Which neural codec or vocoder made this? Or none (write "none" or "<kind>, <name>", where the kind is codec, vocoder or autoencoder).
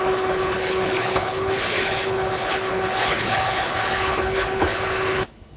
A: codec, HILCodec